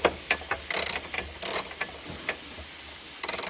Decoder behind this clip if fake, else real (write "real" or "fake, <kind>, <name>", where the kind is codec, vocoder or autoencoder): real